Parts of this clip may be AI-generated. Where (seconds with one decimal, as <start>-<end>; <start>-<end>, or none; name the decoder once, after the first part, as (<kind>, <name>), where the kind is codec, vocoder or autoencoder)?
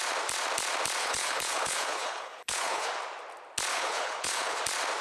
1.0-2.9 (codec, HILCodec); 3.7-4.6